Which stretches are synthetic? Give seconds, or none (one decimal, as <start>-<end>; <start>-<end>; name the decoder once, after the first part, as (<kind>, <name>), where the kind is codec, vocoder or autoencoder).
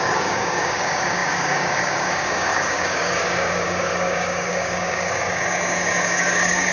0.0-6.7 (codec, DAC)